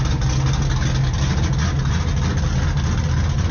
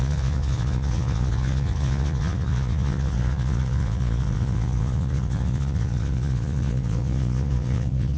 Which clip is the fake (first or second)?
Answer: second